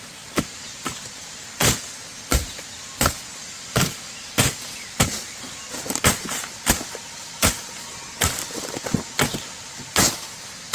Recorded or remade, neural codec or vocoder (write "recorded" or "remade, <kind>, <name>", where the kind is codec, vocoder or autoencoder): recorded